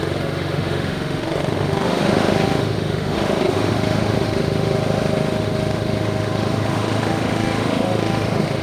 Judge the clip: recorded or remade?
remade